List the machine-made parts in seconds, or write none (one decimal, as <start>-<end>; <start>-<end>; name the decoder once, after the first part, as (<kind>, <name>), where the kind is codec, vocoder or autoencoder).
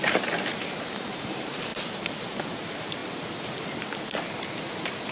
0.0-5.1 (vocoder, BigVGAN v2)